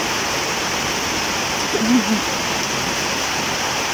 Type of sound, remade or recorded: recorded